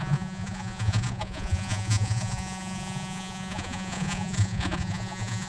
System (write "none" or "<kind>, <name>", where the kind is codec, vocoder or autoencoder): vocoder, Vocos